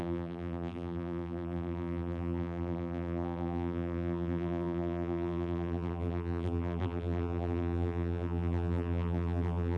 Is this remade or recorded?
remade